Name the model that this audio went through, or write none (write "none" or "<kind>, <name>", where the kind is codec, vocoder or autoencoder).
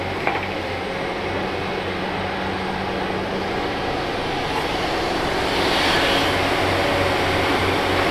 none